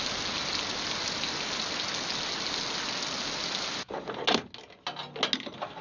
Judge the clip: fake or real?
real